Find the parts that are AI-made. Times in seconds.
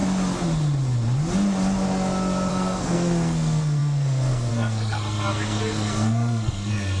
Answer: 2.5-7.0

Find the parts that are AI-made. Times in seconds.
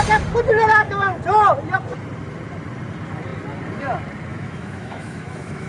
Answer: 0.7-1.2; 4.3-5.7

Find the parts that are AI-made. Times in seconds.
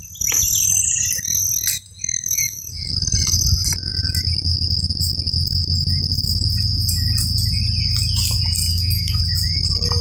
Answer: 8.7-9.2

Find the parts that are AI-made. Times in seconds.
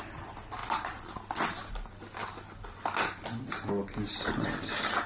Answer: none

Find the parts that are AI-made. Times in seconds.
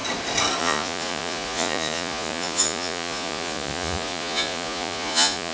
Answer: 0.6-5.5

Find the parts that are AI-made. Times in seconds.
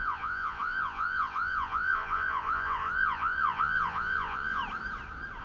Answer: 0.0-4.6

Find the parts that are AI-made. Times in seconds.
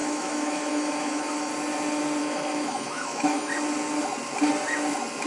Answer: 0.0-1.5; 2.2-3.5